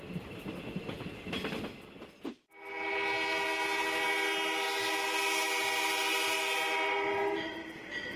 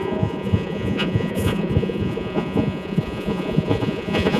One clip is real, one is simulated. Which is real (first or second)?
first